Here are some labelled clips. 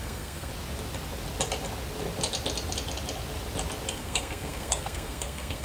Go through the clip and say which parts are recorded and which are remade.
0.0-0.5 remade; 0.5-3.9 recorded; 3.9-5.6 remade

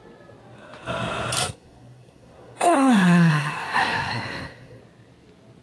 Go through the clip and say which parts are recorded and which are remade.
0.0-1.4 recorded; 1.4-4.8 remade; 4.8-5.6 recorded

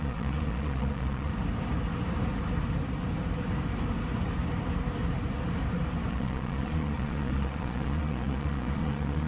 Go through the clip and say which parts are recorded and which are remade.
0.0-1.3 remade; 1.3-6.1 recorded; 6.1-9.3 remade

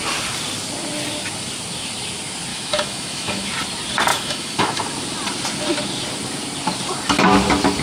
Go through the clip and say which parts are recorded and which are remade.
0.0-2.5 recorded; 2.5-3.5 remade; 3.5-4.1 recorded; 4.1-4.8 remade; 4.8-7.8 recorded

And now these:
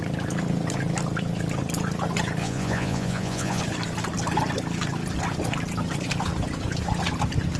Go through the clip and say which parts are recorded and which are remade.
0.0-2.4 recorded; 2.4-3.6 remade; 3.6-7.6 recorded

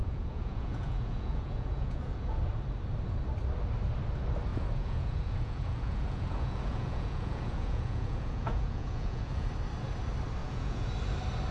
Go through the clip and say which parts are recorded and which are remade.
0.0-2.4 remade; 2.4-4.5 recorded; 4.5-9.5 remade; 9.5-10.4 recorded; 10.4-10.9 remade; 10.9-11.5 recorded

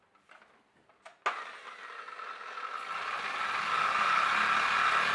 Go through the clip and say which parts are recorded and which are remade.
0.0-5.1 recorded

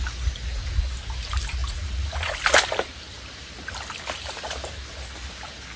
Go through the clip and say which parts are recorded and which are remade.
0.0-1.6 recorded; 1.6-2.3 remade; 2.3-5.8 recorded